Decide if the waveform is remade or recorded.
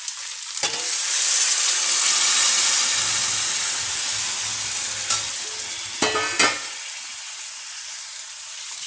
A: recorded